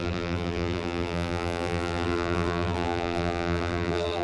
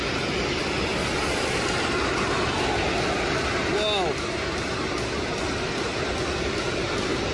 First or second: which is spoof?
first